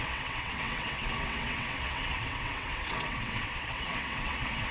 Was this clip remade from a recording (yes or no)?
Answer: yes